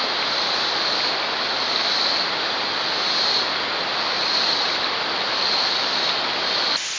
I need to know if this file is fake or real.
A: real